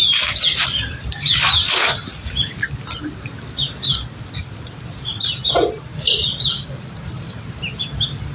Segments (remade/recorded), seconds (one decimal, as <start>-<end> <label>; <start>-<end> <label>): 0.0-2.1 recorded; 2.1-2.6 remade; 2.6-8.3 recorded